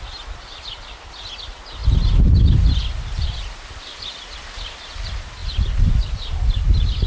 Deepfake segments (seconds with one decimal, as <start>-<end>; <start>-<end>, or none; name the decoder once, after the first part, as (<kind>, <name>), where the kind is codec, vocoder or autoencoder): none